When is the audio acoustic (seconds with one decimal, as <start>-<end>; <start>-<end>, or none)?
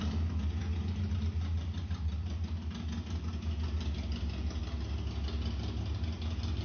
0.0-6.6